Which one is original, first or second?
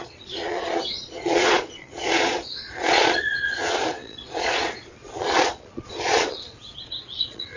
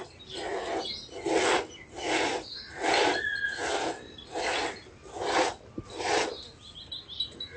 second